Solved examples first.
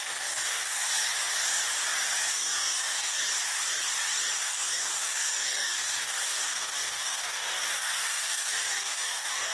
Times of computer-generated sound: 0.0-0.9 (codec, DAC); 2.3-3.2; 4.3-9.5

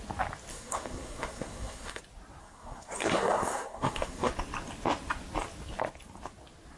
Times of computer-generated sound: 0.5-2.0 (codec, SNAC); 2.4-4.3

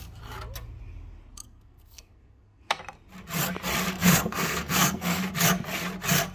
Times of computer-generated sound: 1.4-2.8 (codec, SNAC); 3.9-5.3

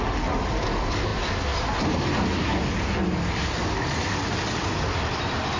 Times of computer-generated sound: none